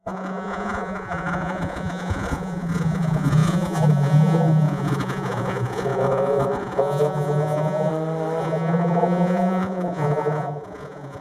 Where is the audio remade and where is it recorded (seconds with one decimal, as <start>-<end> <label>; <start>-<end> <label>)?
0.0-7.9 remade; 7.9-8.4 recorded; 8.4-11.2 remade